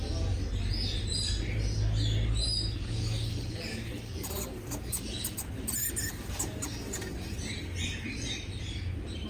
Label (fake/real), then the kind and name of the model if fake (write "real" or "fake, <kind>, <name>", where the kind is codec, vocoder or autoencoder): real